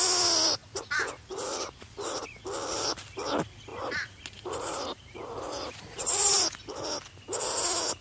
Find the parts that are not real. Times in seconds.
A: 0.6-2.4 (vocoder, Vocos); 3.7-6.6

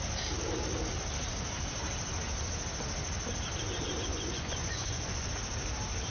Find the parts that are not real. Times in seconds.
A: 4.1-5.3 (vocoder, Vocos)